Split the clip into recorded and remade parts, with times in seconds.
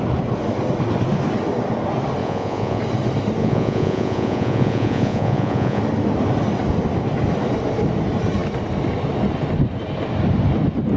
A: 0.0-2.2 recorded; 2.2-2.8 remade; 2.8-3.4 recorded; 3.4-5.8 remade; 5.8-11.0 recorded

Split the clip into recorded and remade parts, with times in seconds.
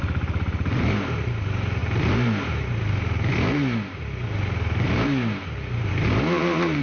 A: 0.0-6.8 remade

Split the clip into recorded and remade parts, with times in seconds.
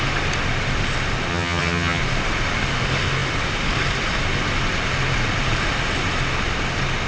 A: 0.0-1.3 recorded; 1.3-2.0 remade; 2.0-7.1 recorded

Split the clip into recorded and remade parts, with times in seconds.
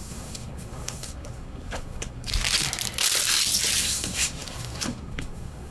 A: 0.0-2.3 remade; 2.3-3.8 recorded; 3.8-5.7 remade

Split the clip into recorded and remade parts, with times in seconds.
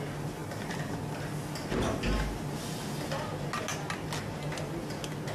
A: 0.0-5.3 recorded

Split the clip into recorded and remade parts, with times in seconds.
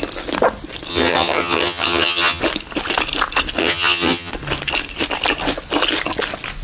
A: 0.0-0.9 recorded; 0.9-2.4 remade; 2.4-3.6 recorded; 3.6-4.3 remade; 4.3-6.6 recorded